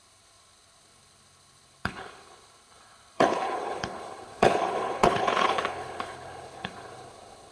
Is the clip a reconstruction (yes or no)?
yes